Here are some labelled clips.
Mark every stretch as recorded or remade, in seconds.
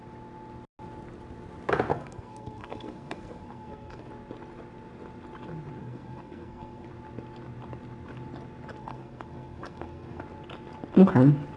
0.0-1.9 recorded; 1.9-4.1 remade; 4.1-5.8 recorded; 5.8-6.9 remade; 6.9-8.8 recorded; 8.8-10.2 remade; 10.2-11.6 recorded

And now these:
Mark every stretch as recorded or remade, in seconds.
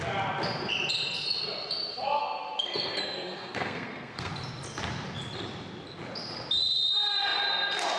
0.0-2.0 recorded; 2.0-4.3 remade; 4.3-8.0 recorded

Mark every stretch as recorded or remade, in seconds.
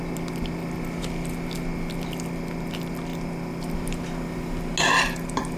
0.0-5.6 recorded